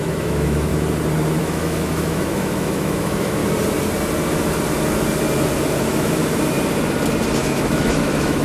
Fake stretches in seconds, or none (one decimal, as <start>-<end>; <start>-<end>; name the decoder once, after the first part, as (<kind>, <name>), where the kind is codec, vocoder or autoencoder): 0.0-0.7 (autoencoder, DAC-VAE); 1.4-3.4; 5.8-6.2; 7.4-8.4